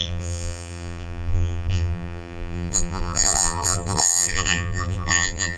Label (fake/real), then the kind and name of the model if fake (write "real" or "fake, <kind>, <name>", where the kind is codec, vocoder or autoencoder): fake, vocoder, BigVGAN v2